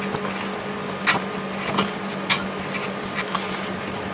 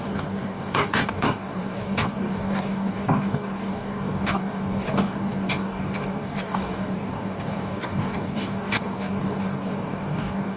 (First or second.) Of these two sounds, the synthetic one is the second